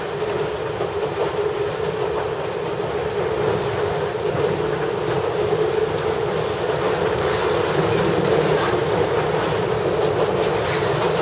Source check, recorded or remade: recorded